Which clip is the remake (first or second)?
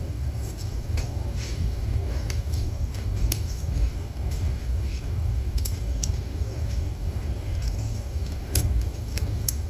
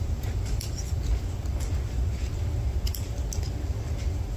first